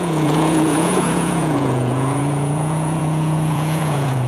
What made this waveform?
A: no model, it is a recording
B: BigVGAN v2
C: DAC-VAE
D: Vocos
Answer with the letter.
D